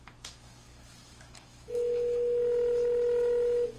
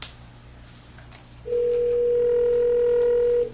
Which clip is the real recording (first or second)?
second